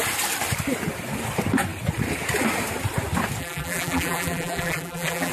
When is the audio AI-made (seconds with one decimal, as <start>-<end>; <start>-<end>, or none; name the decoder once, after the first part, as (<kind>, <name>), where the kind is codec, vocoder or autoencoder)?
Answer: 3.4-5.3 (vocoder, BigVGAN v2)